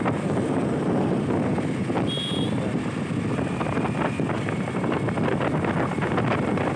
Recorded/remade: recorded